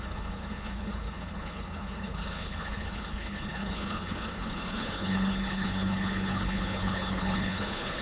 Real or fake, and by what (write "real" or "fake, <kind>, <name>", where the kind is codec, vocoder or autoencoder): fake, codec, HILCodec